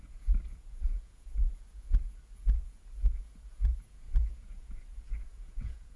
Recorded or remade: remade